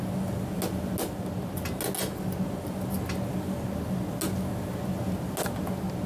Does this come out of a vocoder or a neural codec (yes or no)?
no